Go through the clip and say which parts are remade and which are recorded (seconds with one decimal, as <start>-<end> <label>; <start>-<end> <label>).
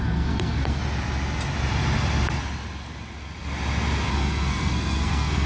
0.0-0.8 remade; 0.8-4.1 recorded; 4.1-5.5 remade